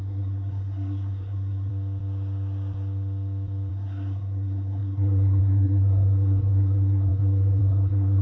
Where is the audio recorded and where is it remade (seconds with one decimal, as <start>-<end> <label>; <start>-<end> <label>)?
0.0-1.7 remade; 1.7-3.7 recorded; 3.7-8.2 remade